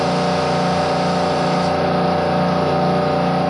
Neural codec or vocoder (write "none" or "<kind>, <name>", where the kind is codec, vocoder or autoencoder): none